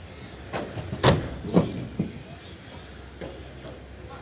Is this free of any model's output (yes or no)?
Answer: yes